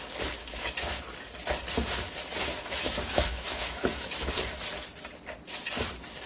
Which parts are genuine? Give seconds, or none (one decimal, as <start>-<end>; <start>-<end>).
0.0-0.4; 1.0-2.5; 4.3-6.3